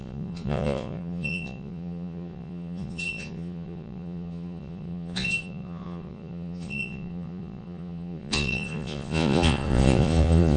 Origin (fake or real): fake